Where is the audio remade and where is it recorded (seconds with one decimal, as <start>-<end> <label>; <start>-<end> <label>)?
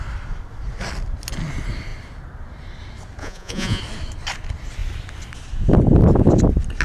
0.0-3.2 recorded; 3.2-3.8 remade; 3.8-6.8 recorded